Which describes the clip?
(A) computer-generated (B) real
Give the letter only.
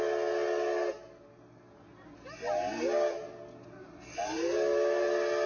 B